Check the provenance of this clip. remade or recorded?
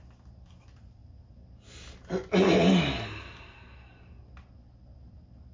recorded